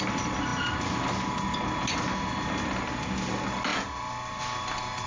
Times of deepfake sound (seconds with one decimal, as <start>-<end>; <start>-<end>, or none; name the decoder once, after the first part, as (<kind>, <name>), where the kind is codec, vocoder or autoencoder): none